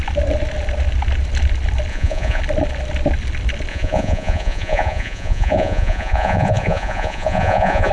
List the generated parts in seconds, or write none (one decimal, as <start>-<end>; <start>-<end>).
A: 1.9-2.4; 3.7-7.9